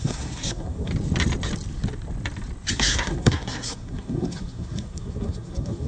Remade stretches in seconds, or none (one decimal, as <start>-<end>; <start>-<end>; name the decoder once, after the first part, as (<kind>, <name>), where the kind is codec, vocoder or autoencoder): 0.0-0.9 (codec, SNAC); 2.7-5.9